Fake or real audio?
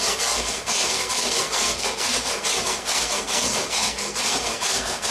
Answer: fake